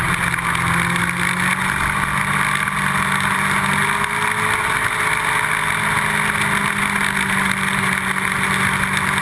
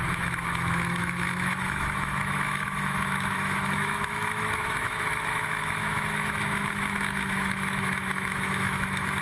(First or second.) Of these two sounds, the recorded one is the first